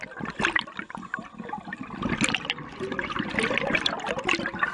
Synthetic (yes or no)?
no